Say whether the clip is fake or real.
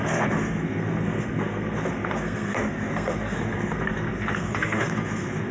fake